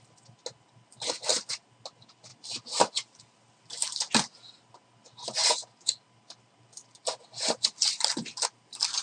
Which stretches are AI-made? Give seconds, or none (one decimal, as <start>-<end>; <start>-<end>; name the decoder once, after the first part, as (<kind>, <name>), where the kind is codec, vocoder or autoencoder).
none